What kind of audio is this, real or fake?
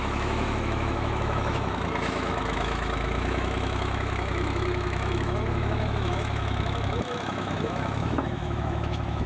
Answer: fake